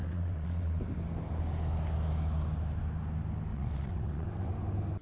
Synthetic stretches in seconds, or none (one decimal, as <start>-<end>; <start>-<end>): 0.0-0.8; 3.5-4.5